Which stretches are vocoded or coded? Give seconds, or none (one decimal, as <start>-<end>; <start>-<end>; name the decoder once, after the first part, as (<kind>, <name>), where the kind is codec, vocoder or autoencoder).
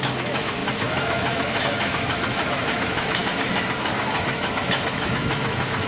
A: 0.0-5.9 (autoencoder, DAC-VAE)